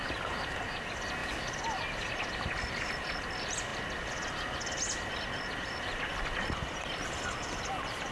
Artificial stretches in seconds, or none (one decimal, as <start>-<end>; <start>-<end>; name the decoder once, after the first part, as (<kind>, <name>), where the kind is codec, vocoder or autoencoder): none